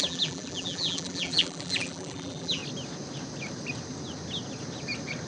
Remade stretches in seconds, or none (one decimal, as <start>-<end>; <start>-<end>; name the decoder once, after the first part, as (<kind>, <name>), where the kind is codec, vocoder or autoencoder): 0.0-2.6 (vocoder, BigVGAN v2)